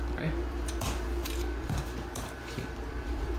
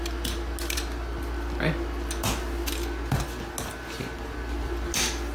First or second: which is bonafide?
second